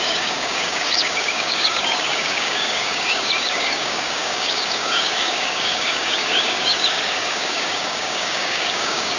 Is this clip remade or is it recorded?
remade